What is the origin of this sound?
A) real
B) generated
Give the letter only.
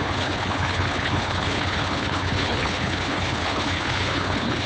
B